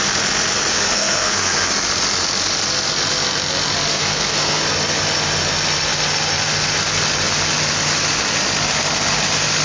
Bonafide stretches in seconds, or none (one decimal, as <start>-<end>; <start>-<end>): 0.0-0.7; 1.7-3.9; 4.6-9.6